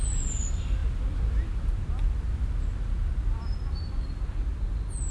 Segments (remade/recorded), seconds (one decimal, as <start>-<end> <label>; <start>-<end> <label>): 0.0-5.1 recorded